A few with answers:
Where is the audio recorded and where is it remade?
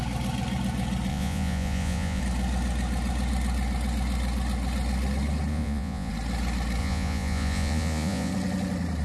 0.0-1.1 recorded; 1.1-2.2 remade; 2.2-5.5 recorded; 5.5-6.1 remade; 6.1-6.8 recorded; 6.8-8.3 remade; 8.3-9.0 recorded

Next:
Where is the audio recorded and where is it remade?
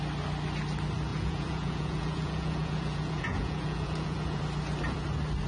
0.0-1.1 recorded; 1.1-4.4 remade; 4.4-5.5 recorded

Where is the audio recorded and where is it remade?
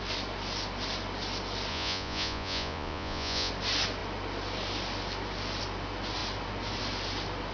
0.0-1.7 recorded; 1.7-3.5 remade; 3.5-7.5 recorded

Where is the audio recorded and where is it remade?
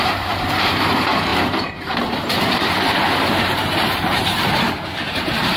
0.0-5.6 remade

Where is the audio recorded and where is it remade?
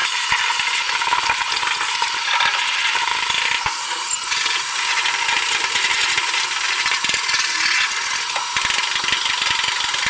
0.0-0.8 recorded; 0.8-6.0 remade; 6.0-9.3 recorded; 9.3-10.1 remade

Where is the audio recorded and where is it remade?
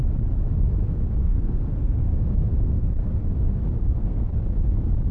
0.0-1.2 recorded; 1.2-4.3 remade; 4.3-5.1 recorded